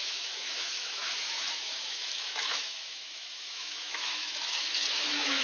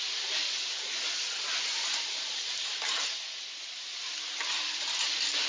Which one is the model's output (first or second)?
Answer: first